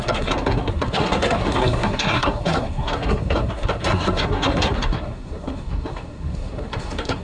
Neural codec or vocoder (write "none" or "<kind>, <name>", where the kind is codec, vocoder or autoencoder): codec, SNAC